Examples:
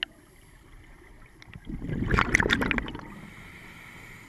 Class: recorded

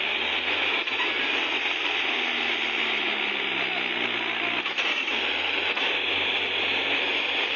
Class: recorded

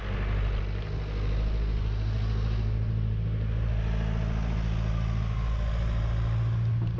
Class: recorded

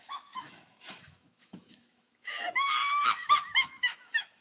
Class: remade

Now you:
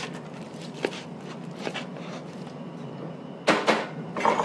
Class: recorded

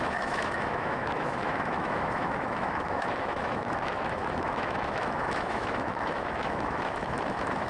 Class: remade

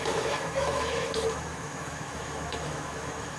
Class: remade